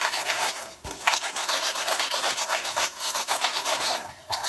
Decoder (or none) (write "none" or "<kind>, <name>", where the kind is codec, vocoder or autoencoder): codec, SNAC